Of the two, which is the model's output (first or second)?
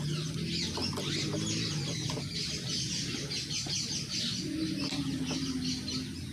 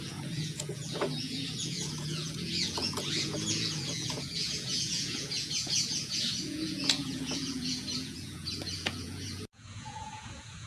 second